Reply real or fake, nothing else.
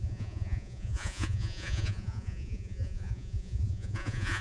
fake